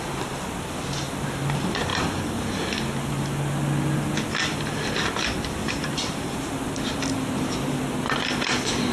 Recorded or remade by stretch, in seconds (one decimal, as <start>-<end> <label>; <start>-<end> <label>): 0.0-5.6 recorded; 5.6-6.5 remade; 6.5-8.9 recorded